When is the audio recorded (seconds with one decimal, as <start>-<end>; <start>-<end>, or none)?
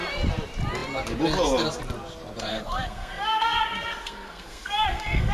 0.0-2.5